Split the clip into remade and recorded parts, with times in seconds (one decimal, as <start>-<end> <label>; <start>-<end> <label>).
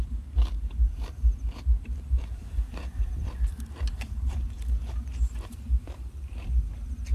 0.0-7.1 remade